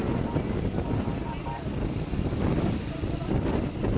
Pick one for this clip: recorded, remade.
remade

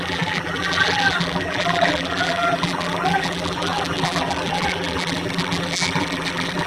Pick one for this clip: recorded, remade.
remade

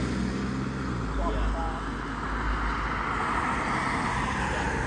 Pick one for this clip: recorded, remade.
recorded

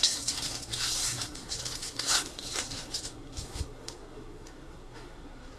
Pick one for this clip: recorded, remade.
remade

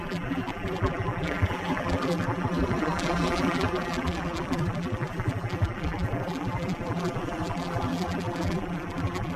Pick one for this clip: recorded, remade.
remade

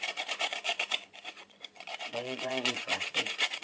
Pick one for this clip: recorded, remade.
remade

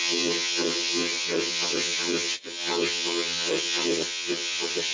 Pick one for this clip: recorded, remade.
remade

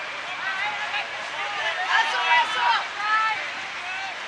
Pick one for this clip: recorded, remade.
recorded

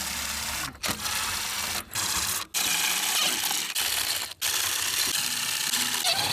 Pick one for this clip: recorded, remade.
recorded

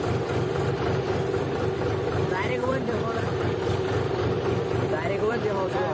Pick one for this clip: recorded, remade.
remade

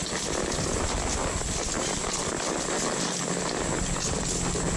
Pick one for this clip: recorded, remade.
recorded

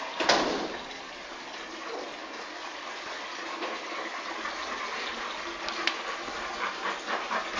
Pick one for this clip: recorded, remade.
recorded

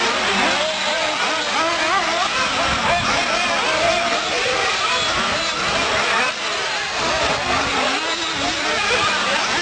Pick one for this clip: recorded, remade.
recorded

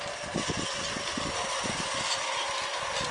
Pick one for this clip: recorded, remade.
recorded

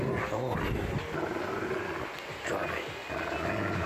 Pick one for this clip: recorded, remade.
recorded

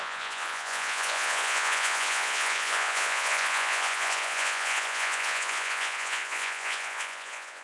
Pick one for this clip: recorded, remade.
remade